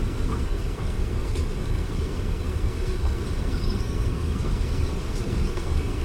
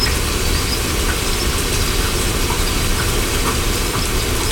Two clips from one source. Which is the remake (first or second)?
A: first